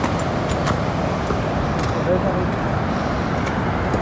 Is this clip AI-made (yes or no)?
no